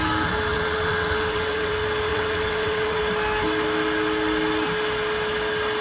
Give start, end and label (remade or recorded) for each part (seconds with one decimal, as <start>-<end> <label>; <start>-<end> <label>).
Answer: 0.0-0.5 recorded; 0.5-1.7 remade; 1.7-2.1 recorded; 2.1-3.0 remade; 3.0-5.8 recorded